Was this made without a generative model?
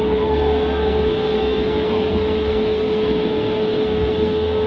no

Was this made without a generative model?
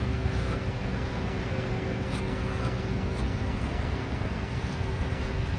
no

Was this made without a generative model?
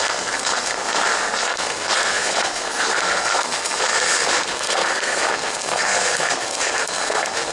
no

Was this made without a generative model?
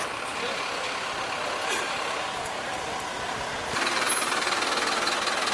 yes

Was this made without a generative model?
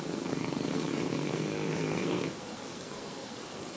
no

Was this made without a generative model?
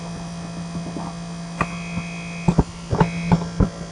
yes